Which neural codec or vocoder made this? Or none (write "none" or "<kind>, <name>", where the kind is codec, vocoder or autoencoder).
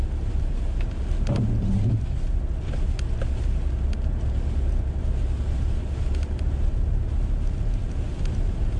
none